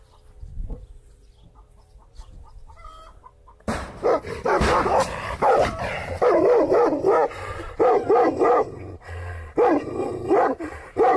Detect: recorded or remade recorded